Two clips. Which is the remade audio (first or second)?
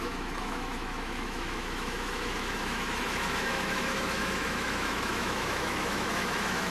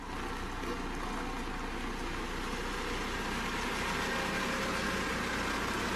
first